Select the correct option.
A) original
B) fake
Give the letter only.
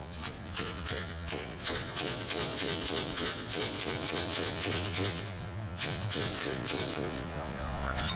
B